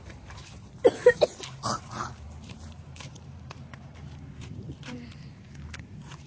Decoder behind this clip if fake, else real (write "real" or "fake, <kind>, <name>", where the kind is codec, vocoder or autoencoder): fake, vocoder, BigVGAN v2